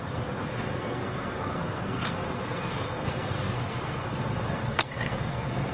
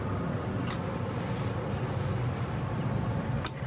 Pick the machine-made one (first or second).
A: first